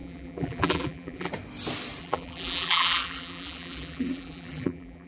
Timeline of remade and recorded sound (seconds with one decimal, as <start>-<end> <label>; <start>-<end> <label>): 0.0-1.3 remade; 1.3-2.0 recorded; 2.0-5.1 remade